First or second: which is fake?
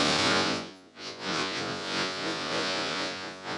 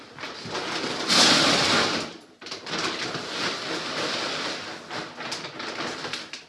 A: first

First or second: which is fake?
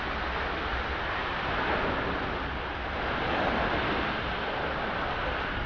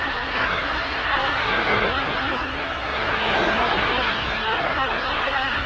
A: second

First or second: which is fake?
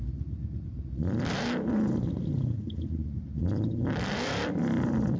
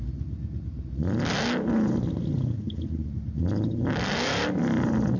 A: first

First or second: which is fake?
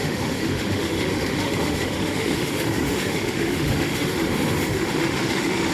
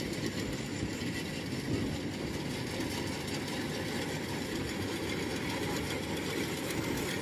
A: first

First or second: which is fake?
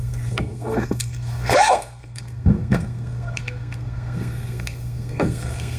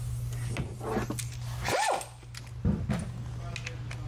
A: first